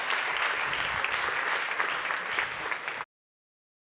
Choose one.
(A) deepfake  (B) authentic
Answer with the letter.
B